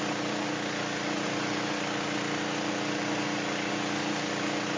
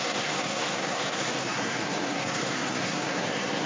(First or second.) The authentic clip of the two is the first